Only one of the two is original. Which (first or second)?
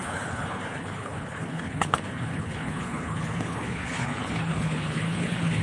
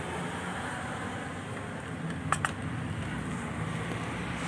second